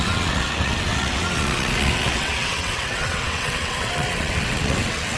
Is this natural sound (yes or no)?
no